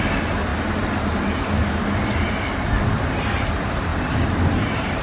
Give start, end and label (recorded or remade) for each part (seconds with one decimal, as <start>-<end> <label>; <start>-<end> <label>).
0.0-5.0 recorded